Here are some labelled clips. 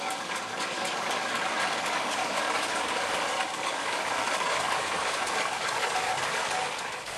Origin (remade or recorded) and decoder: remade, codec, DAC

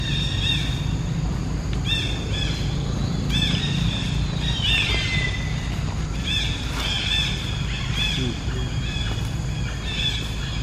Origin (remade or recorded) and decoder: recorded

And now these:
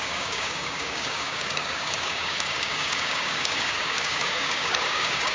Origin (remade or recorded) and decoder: remade, codec, DAC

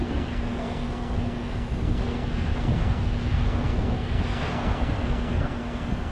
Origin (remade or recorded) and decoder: remade, codec, SNAC